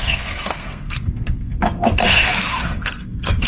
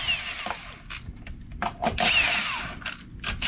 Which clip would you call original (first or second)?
second